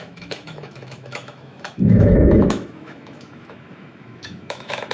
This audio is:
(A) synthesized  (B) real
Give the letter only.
A